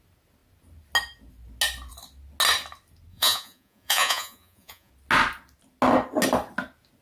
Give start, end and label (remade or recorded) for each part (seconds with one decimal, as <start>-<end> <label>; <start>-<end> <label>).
0.0-3.1 recorded; 3.1-4.9 remade; 4.9-7.0 recorded